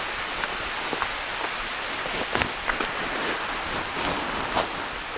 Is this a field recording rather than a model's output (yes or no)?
yes